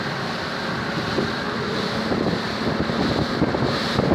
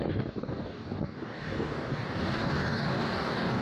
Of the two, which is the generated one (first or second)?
second